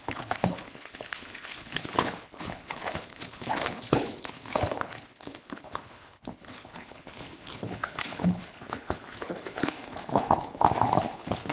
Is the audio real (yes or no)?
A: no